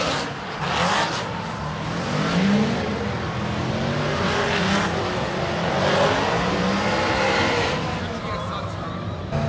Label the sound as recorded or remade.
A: recorded